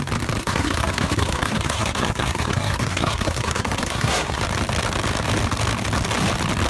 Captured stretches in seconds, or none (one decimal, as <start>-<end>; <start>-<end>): 0.0-0.4; 4.4-6.7